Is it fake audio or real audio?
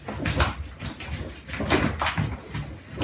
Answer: real